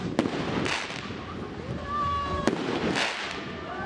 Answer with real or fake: real